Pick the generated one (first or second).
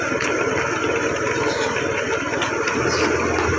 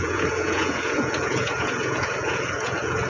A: second